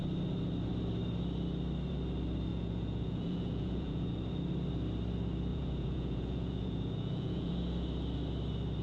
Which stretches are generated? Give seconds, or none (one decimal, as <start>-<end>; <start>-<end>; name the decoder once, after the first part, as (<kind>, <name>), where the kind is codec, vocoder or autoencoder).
2.5-4.1 (vocoder, Vocos); 5.5-7.5